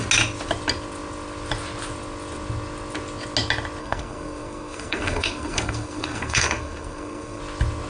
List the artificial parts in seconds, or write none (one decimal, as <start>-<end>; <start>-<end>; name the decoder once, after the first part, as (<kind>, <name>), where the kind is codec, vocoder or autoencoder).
3.8-7.4 (codec, SNAC)